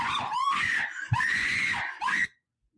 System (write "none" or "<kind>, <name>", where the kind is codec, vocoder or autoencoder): vocoder, Vocos